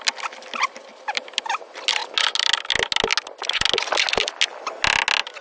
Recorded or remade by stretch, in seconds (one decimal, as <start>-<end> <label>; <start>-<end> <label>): 0.0-5.4 recorded